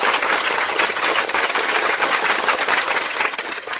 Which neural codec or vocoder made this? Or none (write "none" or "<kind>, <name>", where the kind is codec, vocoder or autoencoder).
vocoder, HiFi-GAN